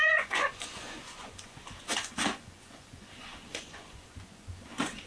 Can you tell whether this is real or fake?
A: fake